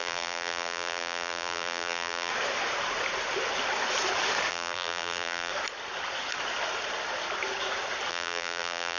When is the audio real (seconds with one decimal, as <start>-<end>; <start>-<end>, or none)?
2.3-4.5; 5.5-8.1